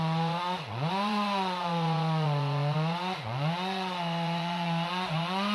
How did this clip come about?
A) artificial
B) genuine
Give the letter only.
A